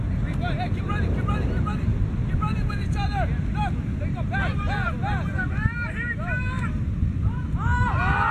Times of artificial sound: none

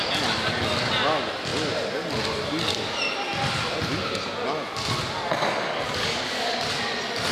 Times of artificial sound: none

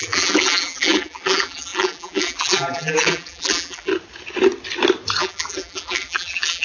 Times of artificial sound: 0.0-3.9; 5.2-6.6

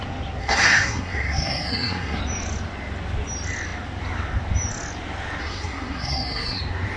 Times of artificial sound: 0.4-2.2; 5.4-6.6

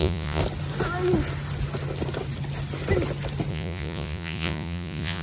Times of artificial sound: 0.0-0.4; 3.5-5.2

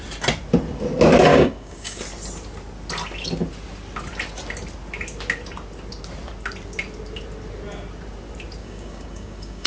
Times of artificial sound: 1.3-2.0; 8.6-9.7